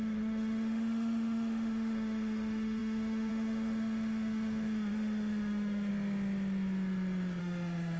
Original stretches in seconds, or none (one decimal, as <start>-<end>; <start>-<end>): 5.9-7.4